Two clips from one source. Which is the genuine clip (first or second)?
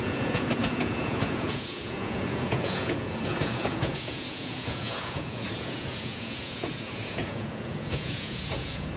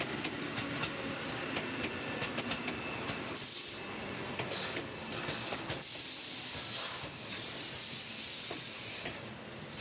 second